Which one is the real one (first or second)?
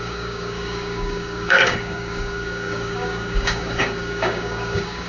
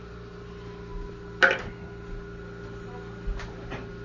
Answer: second